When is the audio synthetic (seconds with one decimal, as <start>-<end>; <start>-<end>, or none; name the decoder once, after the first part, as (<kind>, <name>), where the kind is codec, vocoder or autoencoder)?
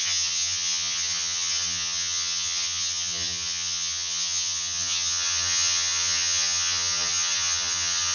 0.0-8.1 (vocoder, HiFi-GAN)